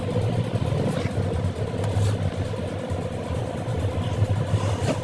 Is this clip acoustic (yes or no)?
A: yes